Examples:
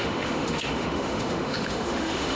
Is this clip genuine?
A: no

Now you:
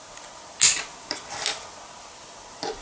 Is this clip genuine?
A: yes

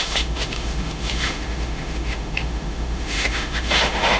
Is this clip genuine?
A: no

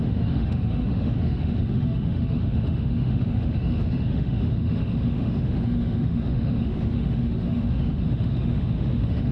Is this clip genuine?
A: no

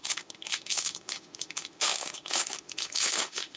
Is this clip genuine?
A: no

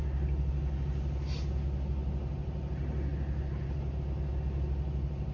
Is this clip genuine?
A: yes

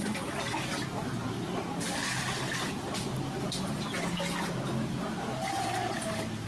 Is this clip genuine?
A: yes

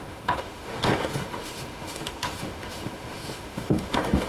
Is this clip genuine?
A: no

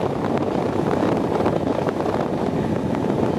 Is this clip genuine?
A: yes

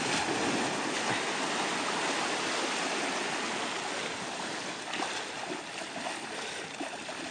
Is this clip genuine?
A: yes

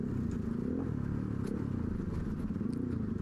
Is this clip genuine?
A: yes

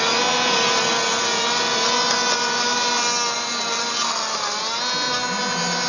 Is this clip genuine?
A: yes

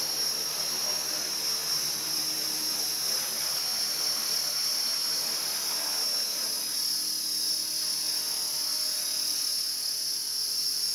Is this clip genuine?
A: yes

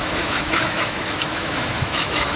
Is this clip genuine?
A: no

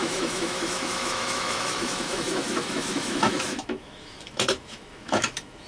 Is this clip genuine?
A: no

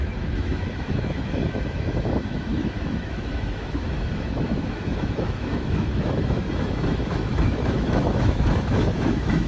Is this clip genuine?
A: no